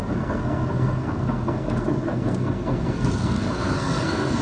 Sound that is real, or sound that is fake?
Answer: fake